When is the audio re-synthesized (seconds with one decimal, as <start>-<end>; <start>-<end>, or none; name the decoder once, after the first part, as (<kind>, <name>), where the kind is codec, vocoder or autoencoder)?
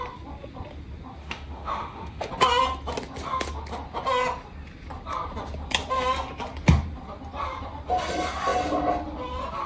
1.2-2.3 (autoencoder, DAC-VAE)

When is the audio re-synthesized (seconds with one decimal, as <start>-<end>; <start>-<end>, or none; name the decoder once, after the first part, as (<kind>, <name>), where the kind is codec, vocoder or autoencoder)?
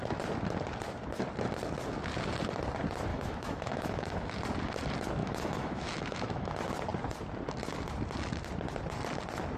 3.1-4.3 (autoencoder, DAC-VAE); 5.2-6.5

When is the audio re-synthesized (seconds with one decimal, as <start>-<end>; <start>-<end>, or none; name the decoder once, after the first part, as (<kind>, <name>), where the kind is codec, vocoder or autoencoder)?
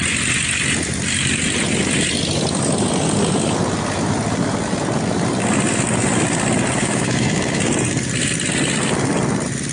6.8-7.6 (autoencoder, DAC-VAE)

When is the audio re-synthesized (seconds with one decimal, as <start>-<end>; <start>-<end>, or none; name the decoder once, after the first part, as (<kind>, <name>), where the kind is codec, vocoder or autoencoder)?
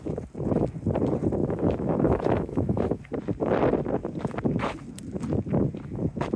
1.4-3.0 (autoencoder, DAC-VAE)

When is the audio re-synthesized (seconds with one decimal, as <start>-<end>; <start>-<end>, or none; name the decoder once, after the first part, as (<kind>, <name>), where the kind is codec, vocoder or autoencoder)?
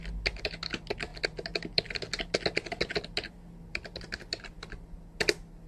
none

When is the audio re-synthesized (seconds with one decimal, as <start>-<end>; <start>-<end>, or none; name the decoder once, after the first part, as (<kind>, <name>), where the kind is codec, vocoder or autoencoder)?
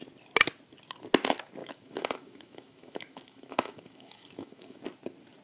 1.6-4.8 (autoencoder, DAC-VAE)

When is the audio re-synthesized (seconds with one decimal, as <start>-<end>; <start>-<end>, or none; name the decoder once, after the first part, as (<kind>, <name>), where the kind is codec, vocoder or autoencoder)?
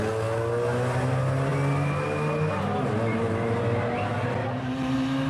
none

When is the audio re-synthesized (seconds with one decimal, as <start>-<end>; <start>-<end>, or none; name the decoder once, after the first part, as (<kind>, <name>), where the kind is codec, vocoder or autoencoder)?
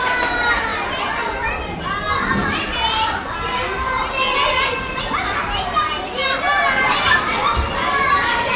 none